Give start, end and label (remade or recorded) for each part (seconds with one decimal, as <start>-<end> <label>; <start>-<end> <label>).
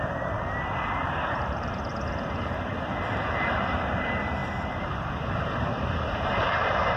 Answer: 0.0-7.0 remade